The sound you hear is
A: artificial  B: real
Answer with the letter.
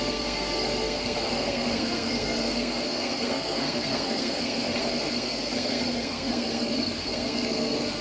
A